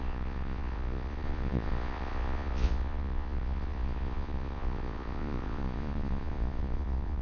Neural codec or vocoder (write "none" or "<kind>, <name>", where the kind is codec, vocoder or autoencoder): vocoder, Vocos